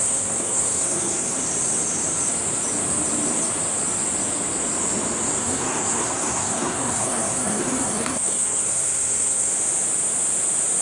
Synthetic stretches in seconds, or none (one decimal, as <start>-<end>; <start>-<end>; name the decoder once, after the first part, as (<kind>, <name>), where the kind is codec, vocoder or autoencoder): 0.0-1.4 (codec, SNAC); 5.4-9.5